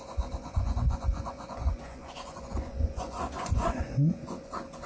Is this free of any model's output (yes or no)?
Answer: no